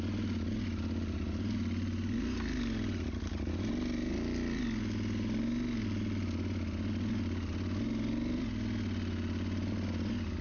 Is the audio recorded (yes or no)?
yes